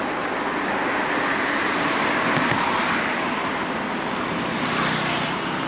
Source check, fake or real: real